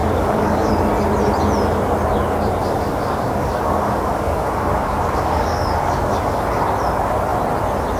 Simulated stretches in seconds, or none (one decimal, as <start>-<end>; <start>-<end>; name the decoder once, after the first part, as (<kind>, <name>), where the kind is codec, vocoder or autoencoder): 0.0-0.7 (codec, DAC); 2.6-6.6